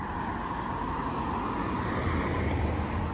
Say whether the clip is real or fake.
real